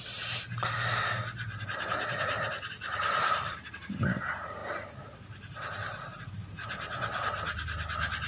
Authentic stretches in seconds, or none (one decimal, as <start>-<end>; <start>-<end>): 0.0-8.3